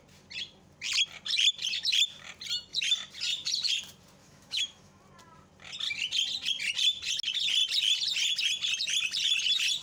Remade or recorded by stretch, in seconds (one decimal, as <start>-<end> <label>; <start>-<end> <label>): 0.0-4.2 recorded; 4.2-5.0 remade; 5.0-9.8 recorded